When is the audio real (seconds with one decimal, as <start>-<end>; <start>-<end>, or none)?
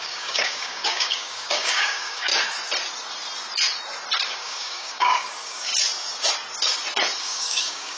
2.3-4.3; 5.7-7.2